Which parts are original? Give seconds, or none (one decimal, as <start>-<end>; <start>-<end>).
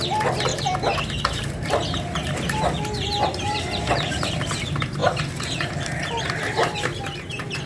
none